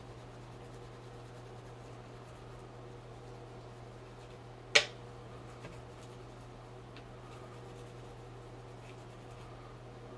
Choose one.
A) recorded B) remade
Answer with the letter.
A